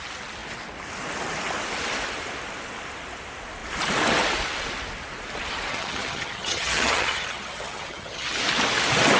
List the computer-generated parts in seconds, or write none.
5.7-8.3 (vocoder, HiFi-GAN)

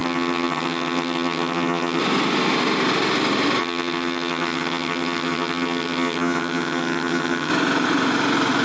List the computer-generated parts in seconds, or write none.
0.0-2.0 (vocoder, HiFi-GAN); 3.6-7.5

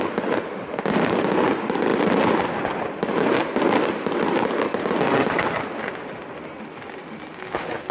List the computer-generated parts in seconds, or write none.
none

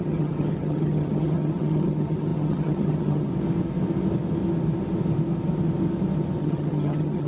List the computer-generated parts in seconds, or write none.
0.0-3.3 (vocoder, HiFi-GAN); 6.4-7.3

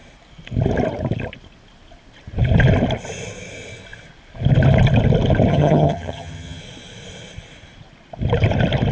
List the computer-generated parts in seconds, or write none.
5.5-6.6 (vocoder, HiFi-GAN)